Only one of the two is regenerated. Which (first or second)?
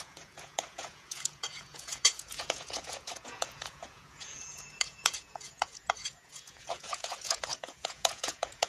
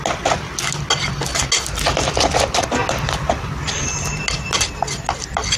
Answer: first